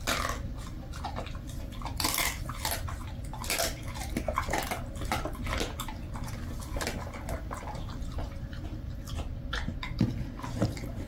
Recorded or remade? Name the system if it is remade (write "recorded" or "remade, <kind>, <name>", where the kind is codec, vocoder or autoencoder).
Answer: recorded